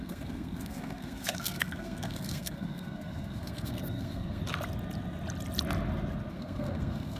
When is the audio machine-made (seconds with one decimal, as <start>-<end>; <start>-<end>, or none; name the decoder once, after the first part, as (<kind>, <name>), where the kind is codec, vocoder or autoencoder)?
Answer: 0.0-4.4 (codec, SNAC); 6.3-7.2